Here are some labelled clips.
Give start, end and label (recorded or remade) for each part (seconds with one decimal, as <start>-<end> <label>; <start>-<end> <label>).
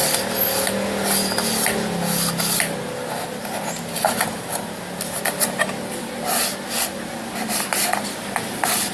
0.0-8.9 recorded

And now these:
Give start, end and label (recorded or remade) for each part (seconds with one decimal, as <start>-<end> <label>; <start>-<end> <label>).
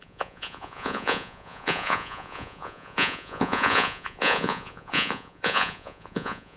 0.0-6.6 remade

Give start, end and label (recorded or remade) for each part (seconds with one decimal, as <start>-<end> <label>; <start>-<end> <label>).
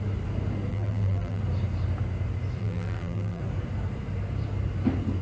0.0-0.7 recorded; 0.7-1.4 remade; 1.4-2.6 recorded; 2.6-3.4 remade; 3.4-5.2 recorded